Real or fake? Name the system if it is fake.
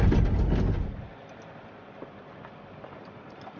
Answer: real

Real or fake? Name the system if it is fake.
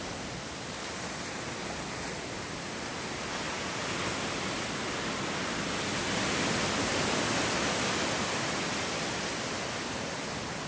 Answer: real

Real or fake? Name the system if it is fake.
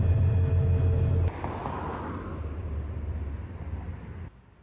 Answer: real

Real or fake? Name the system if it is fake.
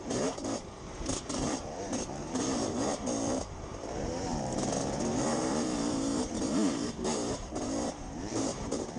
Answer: fake, vocoder, BigVGAN v2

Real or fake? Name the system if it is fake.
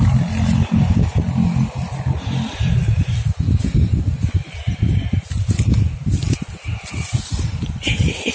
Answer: real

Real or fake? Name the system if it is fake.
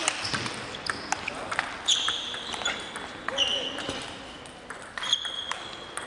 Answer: real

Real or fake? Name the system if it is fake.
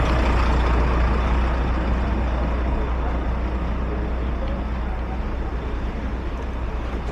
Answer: real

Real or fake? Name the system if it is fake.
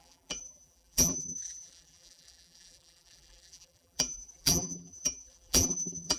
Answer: fake, vocoder, BigVGAN v2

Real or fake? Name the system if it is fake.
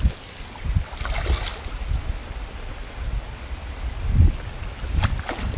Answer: real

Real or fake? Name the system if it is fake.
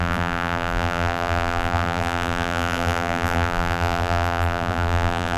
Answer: fake, vocoder, BigVGAN v2